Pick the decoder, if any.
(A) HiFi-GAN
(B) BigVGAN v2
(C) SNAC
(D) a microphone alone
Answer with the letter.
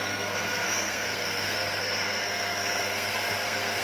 C